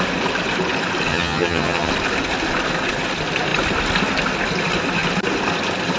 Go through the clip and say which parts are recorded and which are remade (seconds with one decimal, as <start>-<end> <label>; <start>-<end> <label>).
0.0-1.1 recorded; 1.1-1.9 remade; 1.9-6.0 recorded